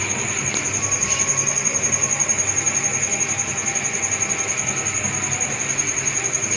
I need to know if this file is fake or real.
real